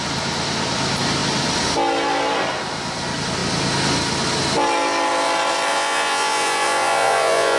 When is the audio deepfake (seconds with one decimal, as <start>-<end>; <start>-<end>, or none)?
5.7-7.6